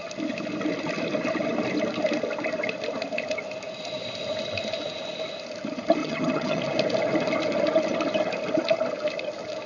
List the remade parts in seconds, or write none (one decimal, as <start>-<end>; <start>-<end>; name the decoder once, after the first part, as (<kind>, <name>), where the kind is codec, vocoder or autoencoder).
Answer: 6.0-6.6 (vocoder, HiFi-GAN)